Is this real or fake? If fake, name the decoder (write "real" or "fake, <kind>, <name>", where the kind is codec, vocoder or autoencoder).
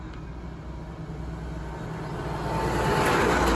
real